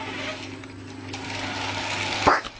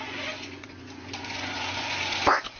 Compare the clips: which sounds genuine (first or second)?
first